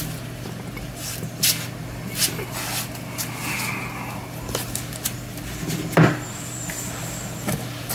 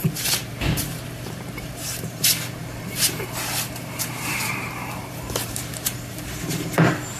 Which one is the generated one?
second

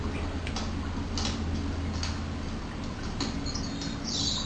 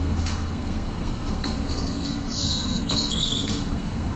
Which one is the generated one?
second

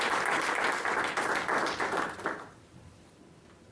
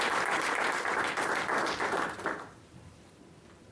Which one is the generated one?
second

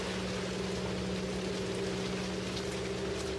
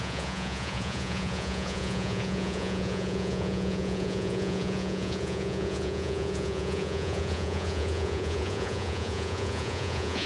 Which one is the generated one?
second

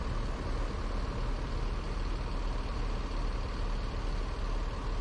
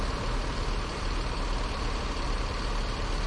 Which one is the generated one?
second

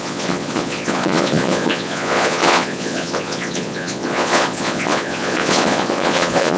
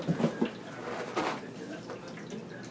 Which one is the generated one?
first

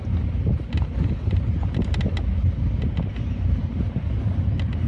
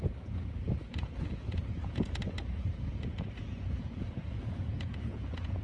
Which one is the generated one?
second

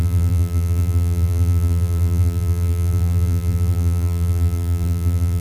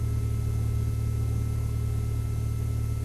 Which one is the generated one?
first